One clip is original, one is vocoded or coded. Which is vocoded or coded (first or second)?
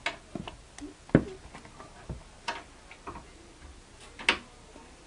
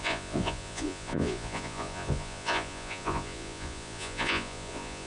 second